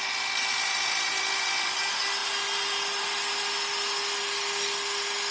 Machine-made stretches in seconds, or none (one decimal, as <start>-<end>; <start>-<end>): none